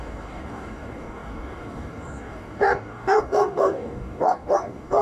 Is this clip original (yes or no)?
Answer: no